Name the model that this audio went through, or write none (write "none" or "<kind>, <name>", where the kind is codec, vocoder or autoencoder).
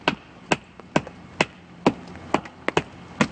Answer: none